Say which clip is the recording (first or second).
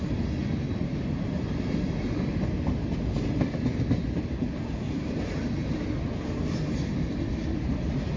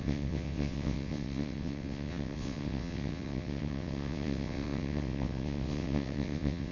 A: first